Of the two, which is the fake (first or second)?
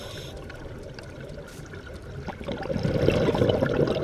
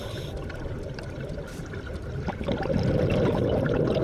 second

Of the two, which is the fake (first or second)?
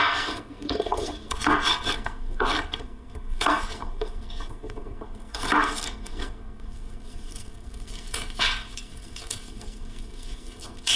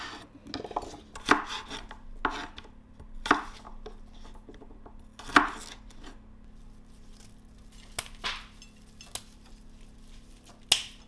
first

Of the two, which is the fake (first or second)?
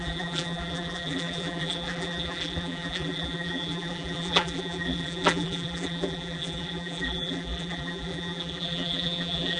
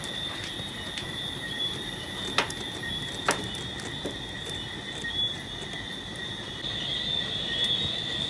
first